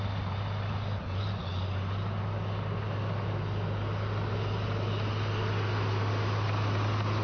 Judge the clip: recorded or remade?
recorded